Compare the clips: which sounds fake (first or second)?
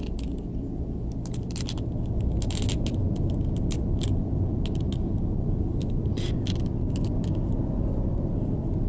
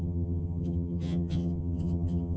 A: second